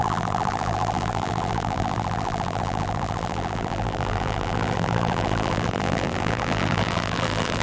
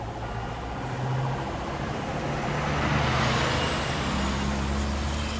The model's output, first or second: first